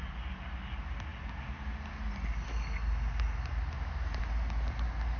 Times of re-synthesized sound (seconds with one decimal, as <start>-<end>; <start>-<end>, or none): none